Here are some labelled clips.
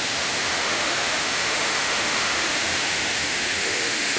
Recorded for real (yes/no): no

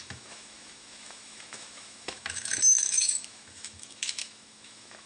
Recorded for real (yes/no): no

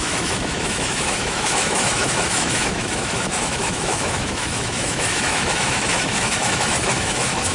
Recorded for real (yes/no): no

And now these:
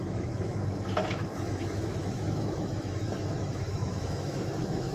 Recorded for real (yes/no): no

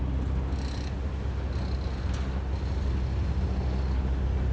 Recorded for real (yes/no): yes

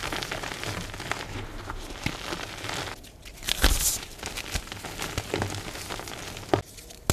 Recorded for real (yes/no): yes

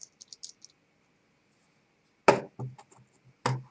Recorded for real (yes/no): yes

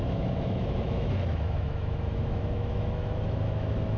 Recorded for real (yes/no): no